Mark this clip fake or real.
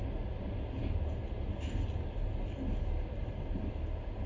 real